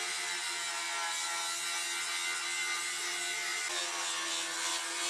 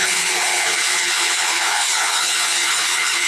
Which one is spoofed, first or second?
second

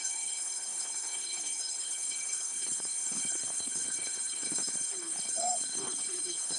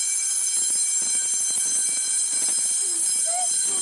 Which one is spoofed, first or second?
first